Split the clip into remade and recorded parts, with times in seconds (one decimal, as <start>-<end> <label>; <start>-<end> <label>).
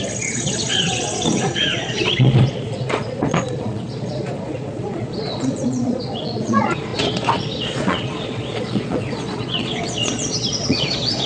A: 0.0-11.3 remade